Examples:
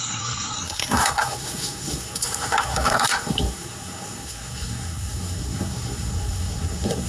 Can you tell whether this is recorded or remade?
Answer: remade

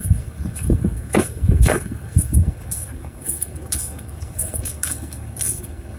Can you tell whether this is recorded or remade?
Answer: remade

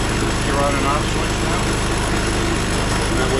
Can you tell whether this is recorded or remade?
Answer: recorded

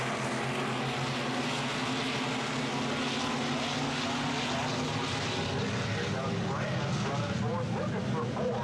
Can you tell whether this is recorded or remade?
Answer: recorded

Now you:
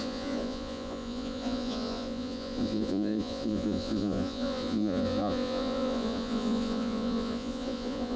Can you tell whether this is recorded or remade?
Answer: remade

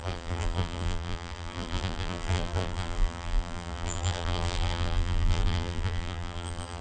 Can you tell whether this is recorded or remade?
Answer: remade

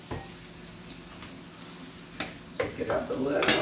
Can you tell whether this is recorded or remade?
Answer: recorded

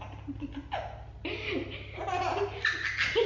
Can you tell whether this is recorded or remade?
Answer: recorded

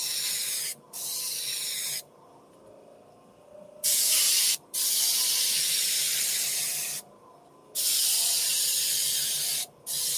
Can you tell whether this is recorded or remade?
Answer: recorded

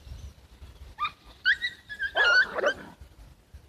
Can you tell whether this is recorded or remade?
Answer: recorded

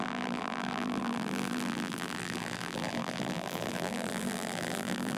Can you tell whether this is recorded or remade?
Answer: remade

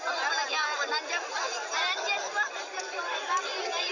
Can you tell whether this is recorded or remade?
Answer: recorded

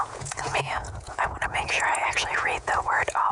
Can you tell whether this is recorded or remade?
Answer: remade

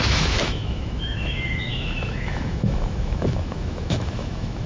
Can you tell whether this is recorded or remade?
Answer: remade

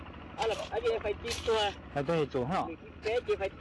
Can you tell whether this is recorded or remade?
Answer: recorded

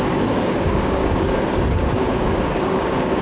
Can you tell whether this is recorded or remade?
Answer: remade